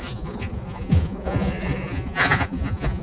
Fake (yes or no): yes